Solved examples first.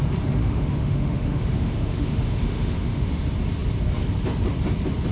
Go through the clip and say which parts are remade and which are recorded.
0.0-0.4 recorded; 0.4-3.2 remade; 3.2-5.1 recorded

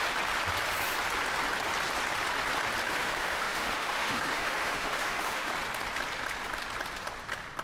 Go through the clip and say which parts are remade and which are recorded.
0.0-2.9 recorded; 2.9-5.5 remade; 5.5-7.6 recorded

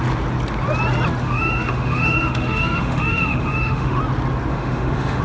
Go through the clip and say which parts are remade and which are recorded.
0.0-1.2 recorded; 1.2-4.0 remade; 4.0-4.5 recorded; 4.5-5.2 remade

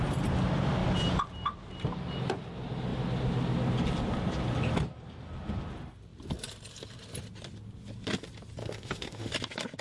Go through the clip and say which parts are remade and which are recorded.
0.0-8.6 recorded; 8.6-9.3 remade; 9.3-9.8 recorded

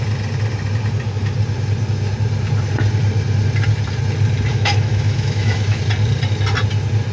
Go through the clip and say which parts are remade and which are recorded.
0.0-4.5 recorded; 4.5-5.8 remade; 5.8-7.1 recorded